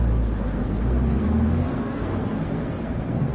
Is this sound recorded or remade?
remade